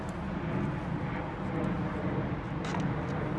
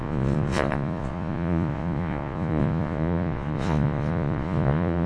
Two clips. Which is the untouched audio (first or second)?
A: first